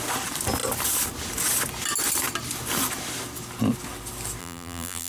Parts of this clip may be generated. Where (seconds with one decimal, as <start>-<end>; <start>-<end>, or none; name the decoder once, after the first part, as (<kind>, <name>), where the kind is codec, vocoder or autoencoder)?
4.4-5.1 (vocoder, BigVGAN v2)

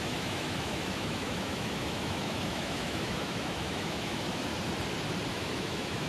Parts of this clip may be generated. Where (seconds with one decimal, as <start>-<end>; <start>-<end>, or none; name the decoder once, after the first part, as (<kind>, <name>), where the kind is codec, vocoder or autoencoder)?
0.0-4.5 (autoencoder, DAC-VAE); 5.3-6.1